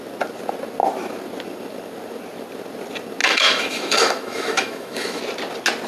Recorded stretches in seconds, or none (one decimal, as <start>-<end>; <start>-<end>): 0.0-3.2; 5.2-5.9

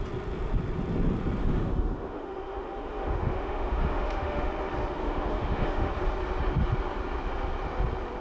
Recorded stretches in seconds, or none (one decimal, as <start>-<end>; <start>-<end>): 0.0-1.4; 4.5-5.0; 5.9-8.2

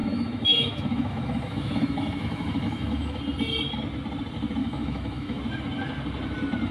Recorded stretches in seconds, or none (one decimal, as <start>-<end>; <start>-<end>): 3.2-4.6; 5.4-6.7